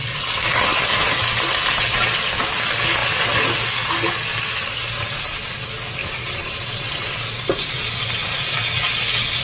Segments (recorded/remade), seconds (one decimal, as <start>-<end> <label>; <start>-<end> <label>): 0.0-6.0 recorded; 6.0-6.9 remade; 6.9-9.4 recorded